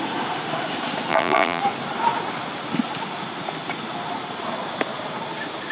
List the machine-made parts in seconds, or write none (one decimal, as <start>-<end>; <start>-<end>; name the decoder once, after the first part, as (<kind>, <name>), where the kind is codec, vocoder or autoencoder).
1.1-1.6 (vocoder, BigVGAN v2)